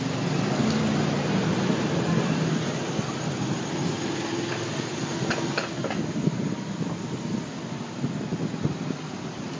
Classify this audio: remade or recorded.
recorded